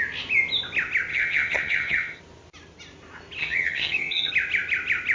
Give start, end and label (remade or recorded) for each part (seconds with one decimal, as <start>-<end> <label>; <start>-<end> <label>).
0.0-1.1 recorded; 1.1-2.2 remade; 2.2-3.4 recorded; 3.4-4.3 remade; 4.3-5.1 recorded